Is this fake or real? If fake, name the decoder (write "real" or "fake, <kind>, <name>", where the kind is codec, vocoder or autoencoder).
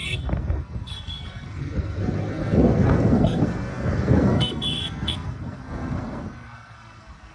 fake, codec, SNAC